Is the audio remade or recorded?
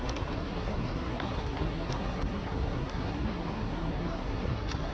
remade